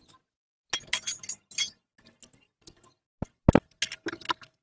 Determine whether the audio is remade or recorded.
recorded